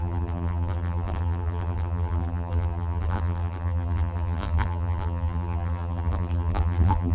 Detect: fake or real fake